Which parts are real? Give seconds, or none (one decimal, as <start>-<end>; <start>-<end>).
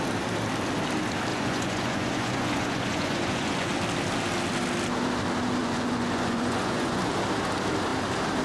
0.0-1.3; 3.7-5.6; 7.0-8.4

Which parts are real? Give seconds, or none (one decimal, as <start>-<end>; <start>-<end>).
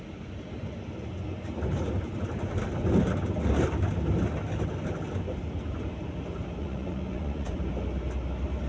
0.0-6.6; 7.6-8.7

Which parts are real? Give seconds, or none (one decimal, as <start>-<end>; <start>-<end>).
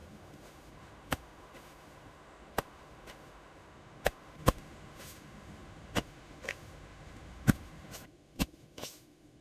none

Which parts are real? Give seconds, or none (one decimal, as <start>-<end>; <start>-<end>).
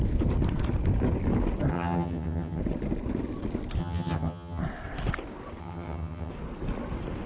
0.0-1.7; 2.6-3.8; 4.6-5.6; 6.3-7.3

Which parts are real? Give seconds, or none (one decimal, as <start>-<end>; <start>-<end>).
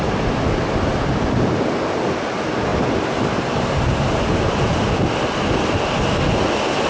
0.0-6.9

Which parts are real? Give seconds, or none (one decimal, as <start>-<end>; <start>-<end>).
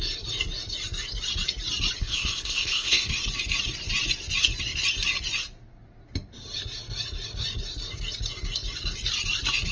0.0-2.0; 3.1-9.7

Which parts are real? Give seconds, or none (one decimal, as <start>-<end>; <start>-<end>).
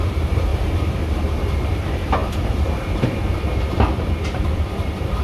0.5-1.3